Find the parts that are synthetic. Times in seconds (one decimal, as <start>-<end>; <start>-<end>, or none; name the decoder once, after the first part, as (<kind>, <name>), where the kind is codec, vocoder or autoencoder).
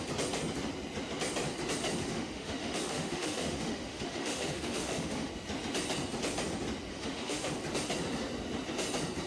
2.0-5.3 (autoencoder, DAC-VAE); 6.9-7.5